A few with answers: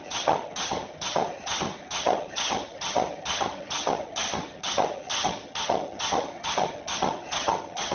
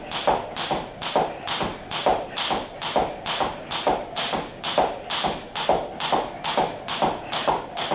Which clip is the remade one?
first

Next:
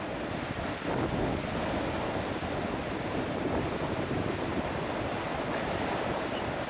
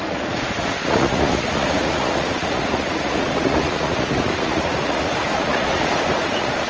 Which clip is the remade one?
second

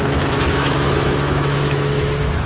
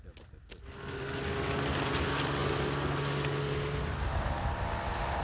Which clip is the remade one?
first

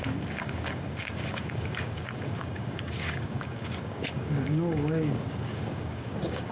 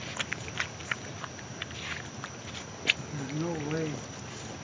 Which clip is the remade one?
first